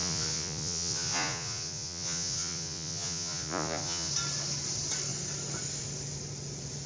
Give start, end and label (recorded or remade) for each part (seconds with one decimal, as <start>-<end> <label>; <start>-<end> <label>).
0.0-4.1 remade; 4.1-6.9 recorded